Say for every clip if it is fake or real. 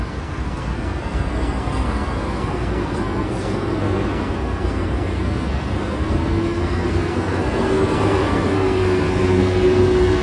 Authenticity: fake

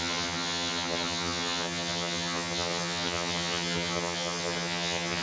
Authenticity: fake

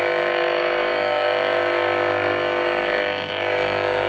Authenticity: fake